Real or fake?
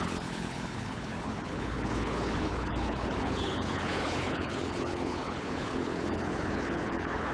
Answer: fake